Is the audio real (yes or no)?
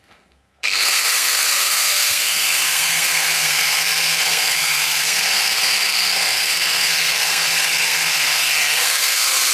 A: no